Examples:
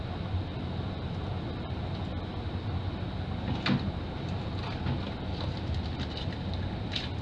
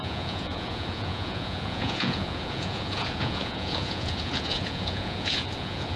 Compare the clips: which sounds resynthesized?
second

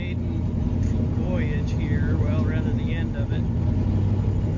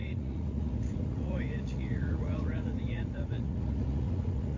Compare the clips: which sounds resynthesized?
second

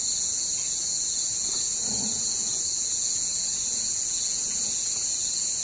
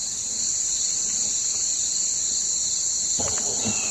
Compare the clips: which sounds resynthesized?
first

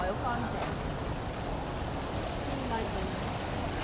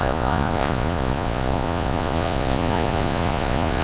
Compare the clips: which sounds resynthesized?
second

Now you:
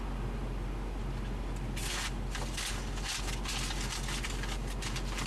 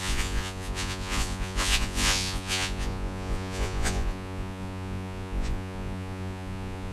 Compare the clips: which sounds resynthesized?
second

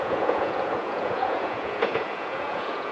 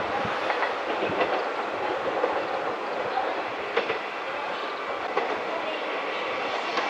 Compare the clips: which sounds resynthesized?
first